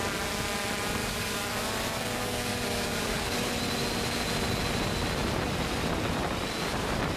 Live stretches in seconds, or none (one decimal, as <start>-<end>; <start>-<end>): 0.0-1.0; 3.5-7.2

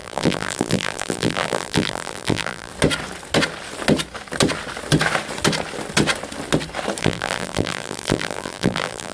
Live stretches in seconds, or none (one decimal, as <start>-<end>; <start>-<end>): 2.7-7.0

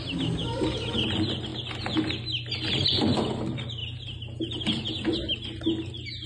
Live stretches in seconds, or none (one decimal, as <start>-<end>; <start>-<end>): 0.0-3.8; 4.7-6.3

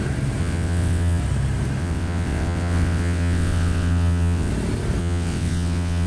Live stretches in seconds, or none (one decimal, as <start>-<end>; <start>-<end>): 0.0-0.4; 1.2-1.8; 4.5-5.0

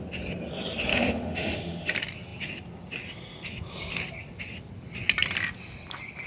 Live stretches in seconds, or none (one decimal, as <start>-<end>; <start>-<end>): 0.0-0.9; 1.9-6.3

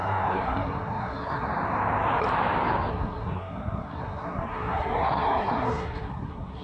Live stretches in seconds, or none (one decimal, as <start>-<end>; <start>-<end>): 1.5-2.9

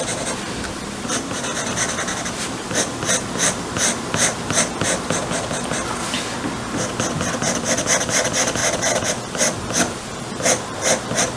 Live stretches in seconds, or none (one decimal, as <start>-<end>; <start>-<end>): 0.0-1.5; 5.2-8.6; 9.3-11.4

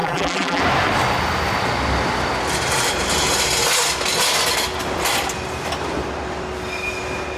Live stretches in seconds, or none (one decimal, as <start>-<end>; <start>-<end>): 0.6-7.4